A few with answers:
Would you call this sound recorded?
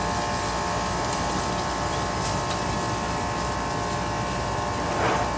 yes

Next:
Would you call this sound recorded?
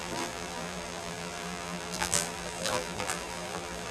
no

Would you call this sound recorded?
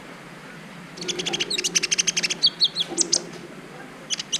yes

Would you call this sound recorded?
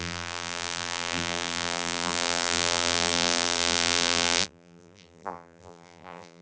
no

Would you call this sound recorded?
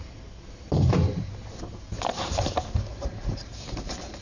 no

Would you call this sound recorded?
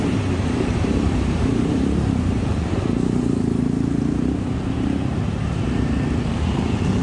no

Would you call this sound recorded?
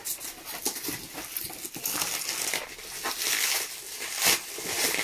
yes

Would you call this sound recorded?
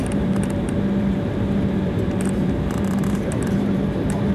no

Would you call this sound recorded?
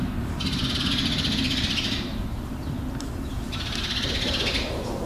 no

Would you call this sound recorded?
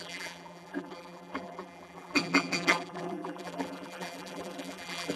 no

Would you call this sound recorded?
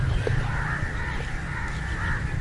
no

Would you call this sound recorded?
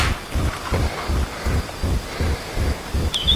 yes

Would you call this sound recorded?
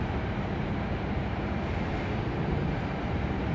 no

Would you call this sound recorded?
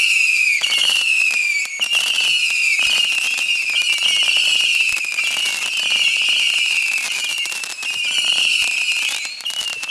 no